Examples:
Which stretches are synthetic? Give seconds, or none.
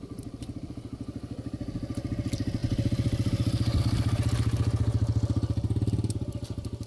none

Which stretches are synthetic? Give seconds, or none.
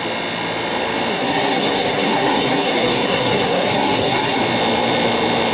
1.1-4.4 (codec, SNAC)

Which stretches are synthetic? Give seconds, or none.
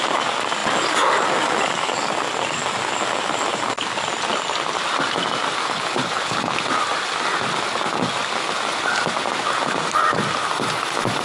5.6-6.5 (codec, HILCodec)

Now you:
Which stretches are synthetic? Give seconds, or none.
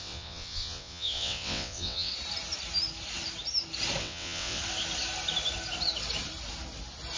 0.0-2.1 (vocoder, WaveNeXt); 4.0-4.6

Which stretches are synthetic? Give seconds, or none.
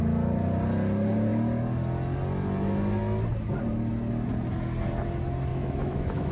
5.5-6.3 (autoencoder, DAC-VAE)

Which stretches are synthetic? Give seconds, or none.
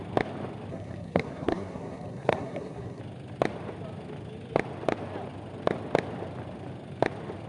0.7-3.0 (codec, SNAC)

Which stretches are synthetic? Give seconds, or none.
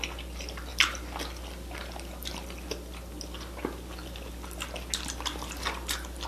none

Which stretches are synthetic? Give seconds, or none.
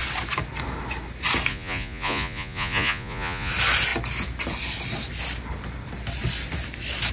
1.5-3.5 (vocoder, Vocos)